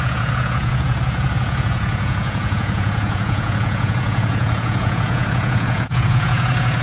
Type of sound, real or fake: fake